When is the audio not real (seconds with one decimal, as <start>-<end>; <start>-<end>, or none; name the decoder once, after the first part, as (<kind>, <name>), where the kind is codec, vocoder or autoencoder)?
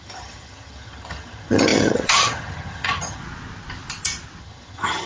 0.0-3.2 (vocoder, HiFi-GAN); 4.4-5.1